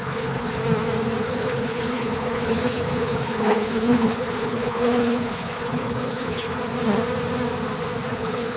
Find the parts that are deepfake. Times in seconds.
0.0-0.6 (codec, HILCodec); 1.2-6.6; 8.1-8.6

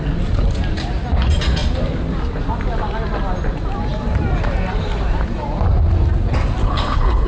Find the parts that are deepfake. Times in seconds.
6.6-7.3 (codec, HILCodec)

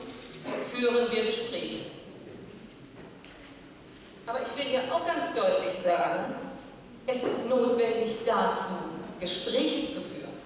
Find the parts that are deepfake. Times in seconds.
5.7-6.4 (codec, HILCodec)

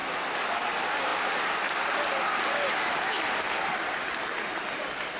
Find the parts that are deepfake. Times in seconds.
none

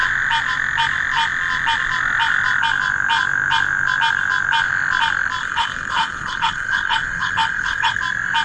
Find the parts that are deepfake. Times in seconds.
5.4-8.0 (codec, HILCodec)

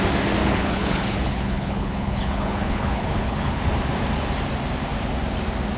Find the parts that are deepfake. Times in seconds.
0.4-3.7 (codec, HILCodec)

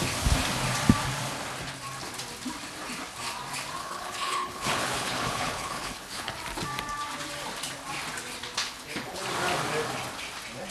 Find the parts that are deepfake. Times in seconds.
3.8-6.3 (codec, HILCodec); 8.6-9.2

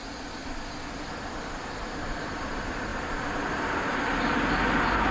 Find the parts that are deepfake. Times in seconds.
none